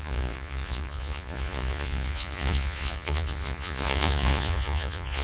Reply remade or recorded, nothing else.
remade